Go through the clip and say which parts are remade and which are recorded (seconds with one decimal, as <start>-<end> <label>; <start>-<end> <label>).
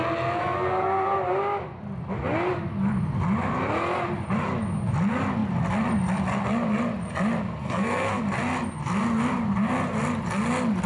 0.0-0.4 recorded; 0.4-1.4 remade; 1.4-7.6 recorded; 7.6-8.2 remade; 8.2-10.9 recorded